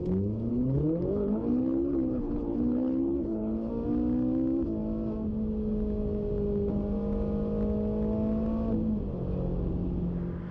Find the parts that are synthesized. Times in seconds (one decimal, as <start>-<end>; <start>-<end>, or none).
0.5-3.7